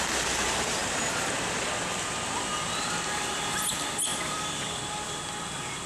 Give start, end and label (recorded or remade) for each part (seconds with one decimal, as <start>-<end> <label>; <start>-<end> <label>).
0.0-4.1 recorded; 4.1-4.8 remade; 4.8-5.9 recorded